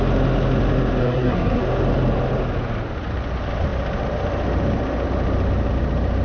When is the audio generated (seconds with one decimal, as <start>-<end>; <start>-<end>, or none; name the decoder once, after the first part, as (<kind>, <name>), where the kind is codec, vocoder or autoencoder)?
1.0-1.6 (codec, SNAC)